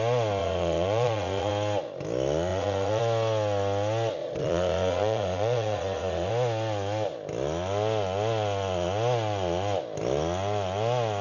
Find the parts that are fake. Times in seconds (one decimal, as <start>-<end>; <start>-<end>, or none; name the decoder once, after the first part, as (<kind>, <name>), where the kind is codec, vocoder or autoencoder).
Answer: 0.4-1.5 (vocoder, Vocos); 2.5-3.0; 4.2-6.3